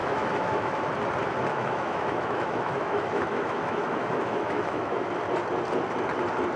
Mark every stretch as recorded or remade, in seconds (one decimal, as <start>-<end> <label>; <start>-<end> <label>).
0.0-0.9 remade; 0.9-1.5 recorded; 1.5-5.1 remade; 5.1-6.6 recorded